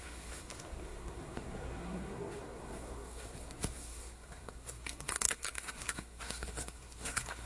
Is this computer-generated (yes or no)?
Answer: yes